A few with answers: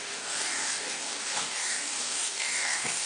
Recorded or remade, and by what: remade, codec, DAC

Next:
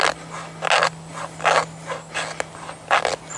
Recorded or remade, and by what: recorded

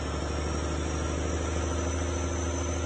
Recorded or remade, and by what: recorded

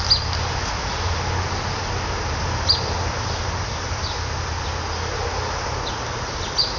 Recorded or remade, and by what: recorded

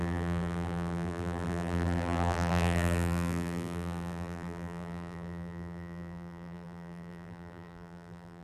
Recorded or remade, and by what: remade, vocoder, BigVGAN v2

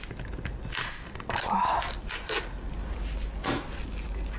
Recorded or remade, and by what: recorded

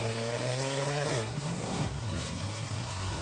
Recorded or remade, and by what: remade, codec, SNAC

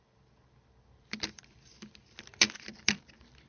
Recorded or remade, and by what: remade, vocoder, BigVGAN v2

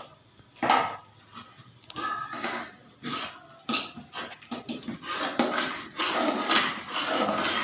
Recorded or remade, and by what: recorded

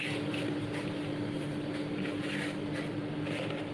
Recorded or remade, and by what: recorded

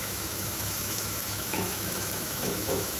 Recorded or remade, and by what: remade, autoencoder, DAC-VAE